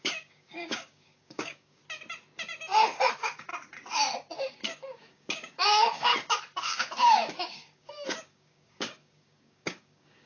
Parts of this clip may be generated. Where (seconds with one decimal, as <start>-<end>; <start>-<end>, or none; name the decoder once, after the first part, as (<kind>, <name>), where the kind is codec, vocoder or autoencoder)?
0.0-1.8 (codec, DAC); 3.1-3.5; 4.5-6.1; 6.6-10.3

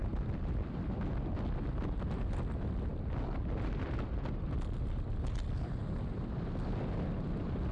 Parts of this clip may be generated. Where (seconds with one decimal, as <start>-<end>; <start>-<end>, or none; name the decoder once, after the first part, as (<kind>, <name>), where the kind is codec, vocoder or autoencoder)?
none

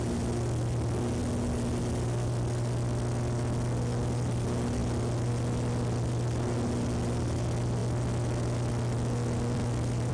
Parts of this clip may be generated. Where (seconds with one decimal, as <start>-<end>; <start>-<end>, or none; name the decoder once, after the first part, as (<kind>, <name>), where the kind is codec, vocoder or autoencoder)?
none

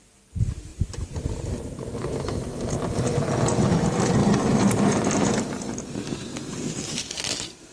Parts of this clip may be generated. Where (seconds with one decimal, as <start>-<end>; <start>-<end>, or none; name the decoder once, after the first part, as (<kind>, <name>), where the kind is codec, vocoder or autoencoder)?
0.7-2.7 (vocoder, BigVGAN v2); 4.2-5.4

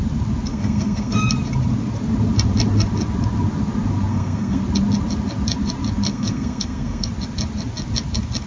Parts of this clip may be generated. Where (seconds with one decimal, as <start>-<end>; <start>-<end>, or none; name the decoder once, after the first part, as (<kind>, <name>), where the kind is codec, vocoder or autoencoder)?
0.5-1.2 (codec, SNAC); 4.1-4.6; 6.1-7.1